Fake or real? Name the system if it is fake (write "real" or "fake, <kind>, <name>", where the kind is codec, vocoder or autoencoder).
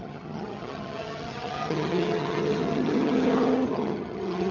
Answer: fake, vocoder, HiFi-GAN